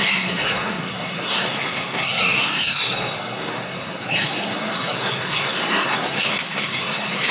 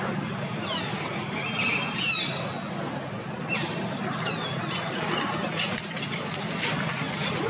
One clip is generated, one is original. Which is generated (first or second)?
first